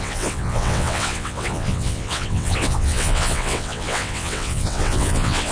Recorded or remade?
remade